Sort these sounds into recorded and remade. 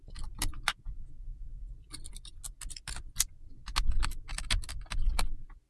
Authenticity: recorded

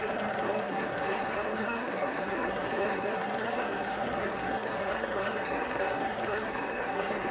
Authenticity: remade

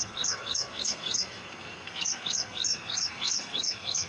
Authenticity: remade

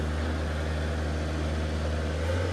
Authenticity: recorded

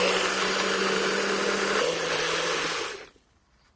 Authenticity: recorded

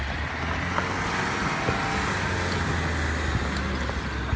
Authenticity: recorded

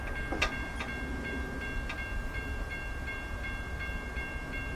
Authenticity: recorded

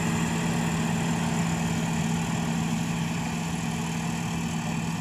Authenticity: recorded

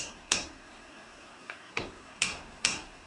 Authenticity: remade